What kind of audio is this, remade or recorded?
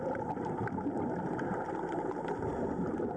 remade